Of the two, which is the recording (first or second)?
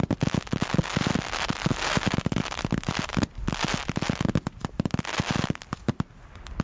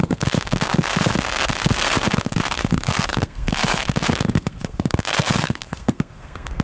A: first